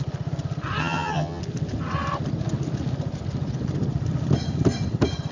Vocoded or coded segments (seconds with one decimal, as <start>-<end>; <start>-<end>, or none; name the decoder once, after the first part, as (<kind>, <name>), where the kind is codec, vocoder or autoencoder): 0.8-1.4 (vocoder, HiFi-GAN)